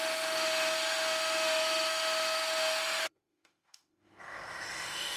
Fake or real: fake